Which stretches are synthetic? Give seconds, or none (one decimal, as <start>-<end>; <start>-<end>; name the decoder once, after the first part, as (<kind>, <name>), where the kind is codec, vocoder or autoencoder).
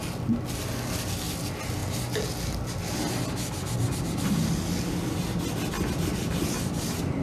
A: none